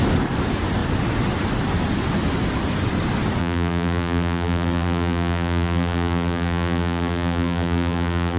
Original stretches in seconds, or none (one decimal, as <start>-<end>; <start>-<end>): 0.0-3.4